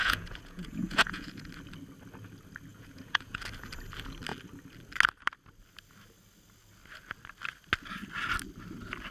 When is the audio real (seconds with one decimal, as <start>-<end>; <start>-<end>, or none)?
1.5-2.7; 3.4-9.1